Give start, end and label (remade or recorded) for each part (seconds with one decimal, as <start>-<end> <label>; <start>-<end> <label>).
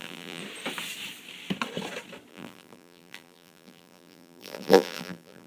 0.0-0.4 remade; 0.4-2.3 recorded; 2.3-5.5 remade